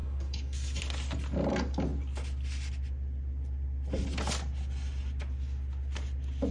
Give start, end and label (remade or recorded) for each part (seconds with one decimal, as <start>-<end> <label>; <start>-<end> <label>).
0.0-0.8 remade; 0.8-6.5 recorded